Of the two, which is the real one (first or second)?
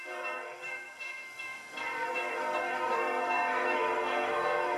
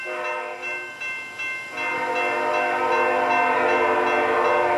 second